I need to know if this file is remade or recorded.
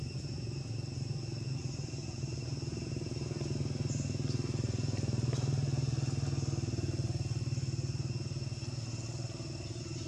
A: recorded